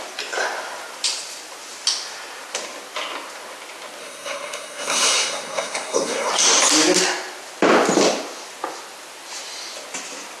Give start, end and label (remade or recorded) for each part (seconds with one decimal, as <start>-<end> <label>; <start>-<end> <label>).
0.0-4.0 recorded; 4.0-6.3 remade; 6.3-10.4 recorded